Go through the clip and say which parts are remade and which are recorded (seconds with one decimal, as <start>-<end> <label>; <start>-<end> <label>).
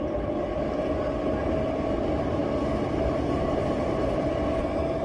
0.0-5.0 recorded